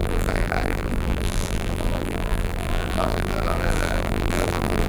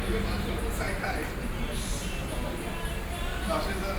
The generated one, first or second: first